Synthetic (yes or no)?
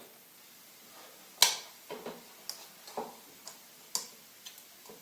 no